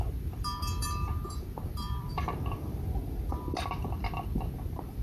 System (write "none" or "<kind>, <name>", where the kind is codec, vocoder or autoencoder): vocoder, BigVGAN v2